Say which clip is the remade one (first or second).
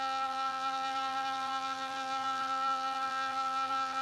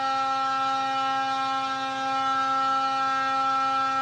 first